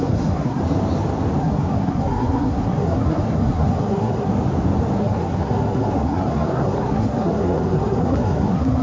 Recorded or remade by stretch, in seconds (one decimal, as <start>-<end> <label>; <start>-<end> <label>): 0.0-0.6 remade; 0.6-1.4 recorded; 1.4-4.3 remade; 4.3-5.0 recorded; 5.0-8.8 remade